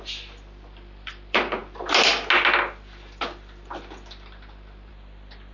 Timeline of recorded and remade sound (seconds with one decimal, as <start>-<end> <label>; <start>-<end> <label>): 0.0-1.6 remade; 1.6-4.9 recorded; 4.9-5.5 remade

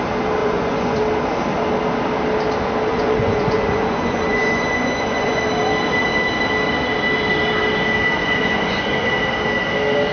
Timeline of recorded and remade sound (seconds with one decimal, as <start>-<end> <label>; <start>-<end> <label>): 0.0-0.4 recorded; 0.4-1.0 remade; 1.0-2.9 recorded; 2.9-5.4 remade; 5.4-8.2 recorded; 8.2-9.1 remade; 9.1-10.1 recorded